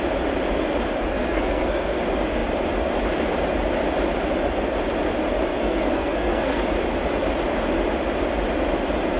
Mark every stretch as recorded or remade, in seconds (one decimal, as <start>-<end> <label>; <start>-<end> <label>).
0.0-1.1 recorded; 1.1-2.0 remade; 2.0-5.5 recorded; 5.5-6.6 remade; 6.6-9.2 recorded